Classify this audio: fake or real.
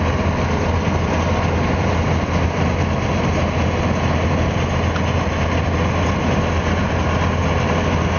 real